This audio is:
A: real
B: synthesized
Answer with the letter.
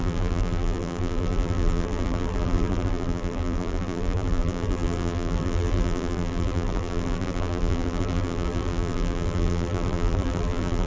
B